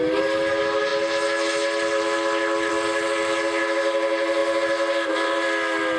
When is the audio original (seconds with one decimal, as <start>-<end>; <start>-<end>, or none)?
0.0-6.0